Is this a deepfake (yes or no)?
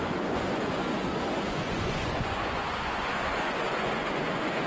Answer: yes